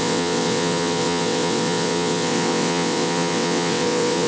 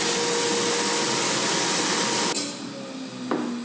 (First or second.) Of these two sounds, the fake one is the first